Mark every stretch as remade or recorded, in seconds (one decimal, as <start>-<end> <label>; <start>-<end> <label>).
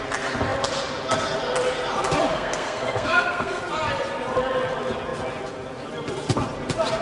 0.0-2.3 recorded; 2.3-3.6 remade; 3.6-7.0 recorded